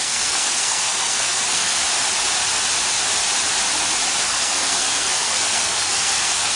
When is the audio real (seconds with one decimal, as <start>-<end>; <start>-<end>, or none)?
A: 1.8-4.2